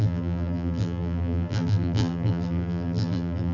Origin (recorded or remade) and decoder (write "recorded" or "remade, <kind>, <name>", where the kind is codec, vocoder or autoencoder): remade, vocoder, BigVGAN v2